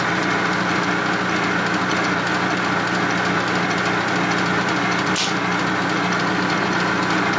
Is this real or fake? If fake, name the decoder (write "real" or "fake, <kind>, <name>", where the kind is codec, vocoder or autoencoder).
real